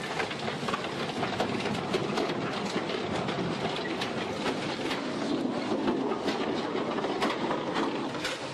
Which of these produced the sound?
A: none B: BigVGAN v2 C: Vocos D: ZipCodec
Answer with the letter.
A